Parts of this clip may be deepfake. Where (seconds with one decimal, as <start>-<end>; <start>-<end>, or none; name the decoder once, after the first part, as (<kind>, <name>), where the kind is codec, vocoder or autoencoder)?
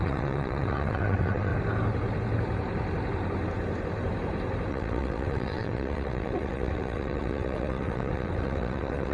0.0-1.5 (vocoder, WaveNeXt); 4.7-9.1